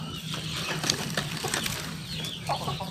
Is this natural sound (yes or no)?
no